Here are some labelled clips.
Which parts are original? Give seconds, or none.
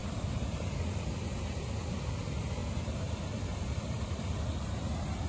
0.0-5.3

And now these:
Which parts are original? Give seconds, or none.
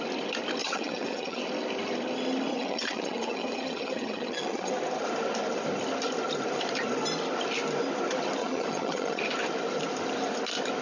0.0-0.6; 1.4-2.5; 4.7-8.4; 9.2-10.8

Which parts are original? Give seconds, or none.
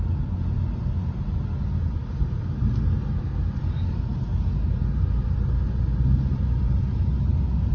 0.0-7.7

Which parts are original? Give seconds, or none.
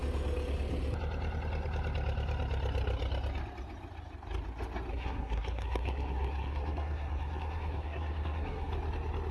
0.0-4.9; 8.7-9.3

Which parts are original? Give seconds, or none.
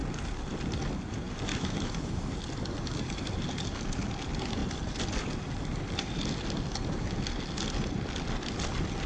0.0-1.5; 2.3-9.1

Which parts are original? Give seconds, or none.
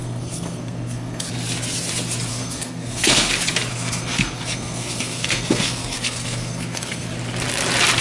1.3-2.3; 3.3-3.7; 7.1-8.0